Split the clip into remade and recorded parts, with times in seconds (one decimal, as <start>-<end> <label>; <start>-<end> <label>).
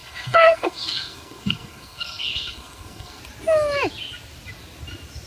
0.0-3.2 remade; 3.2-5.3 recorded